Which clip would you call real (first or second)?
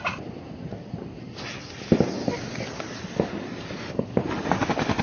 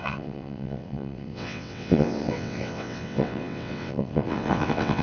first